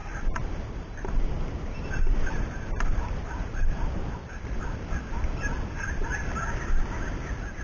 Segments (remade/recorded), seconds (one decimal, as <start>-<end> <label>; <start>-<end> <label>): 0.0-4.6 remade; 4.6-7.6 recorded